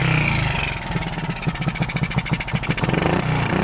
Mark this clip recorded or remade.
recorded